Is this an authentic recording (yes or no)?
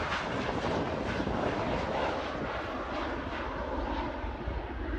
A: yes